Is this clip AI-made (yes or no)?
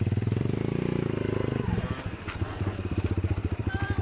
yes